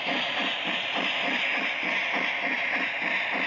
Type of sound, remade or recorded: recorded